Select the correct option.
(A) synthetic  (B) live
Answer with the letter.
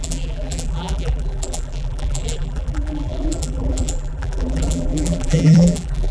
A